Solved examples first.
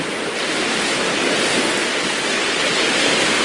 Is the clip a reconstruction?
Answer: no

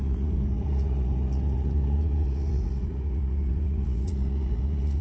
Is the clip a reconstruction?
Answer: yes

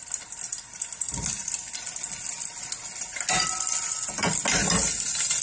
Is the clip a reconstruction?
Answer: no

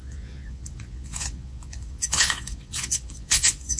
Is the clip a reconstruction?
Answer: yes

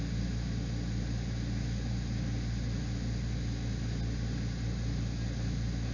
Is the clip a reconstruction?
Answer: no